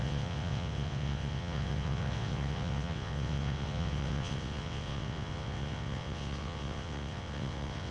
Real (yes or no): no